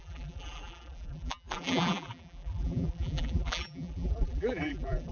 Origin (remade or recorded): remade